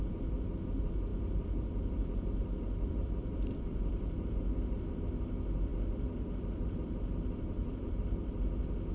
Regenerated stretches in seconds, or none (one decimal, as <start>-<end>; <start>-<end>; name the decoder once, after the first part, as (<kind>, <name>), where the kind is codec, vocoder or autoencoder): 1.1-5.0 (vocoder, BigVGAN v2); 5.7-7.9